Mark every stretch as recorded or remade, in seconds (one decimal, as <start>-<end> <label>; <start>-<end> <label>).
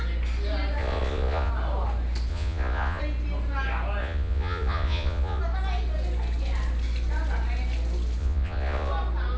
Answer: 0.0-0.8 recorded; 0.8-1.5 remade; 1.5-2.3 recorded; 2.3-3.0 remade; 3.0-4.0 recorded; 4.0-5.4 remade; 5.4-8.2 recorded; 8.2-8.9 remade; 8.9-9.4 recorded